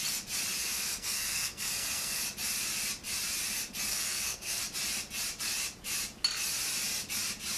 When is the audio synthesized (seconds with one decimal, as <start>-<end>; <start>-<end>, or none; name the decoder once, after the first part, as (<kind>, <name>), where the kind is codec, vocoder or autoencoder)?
0.6-2.2 (codec, SNAC); 3.9-4.6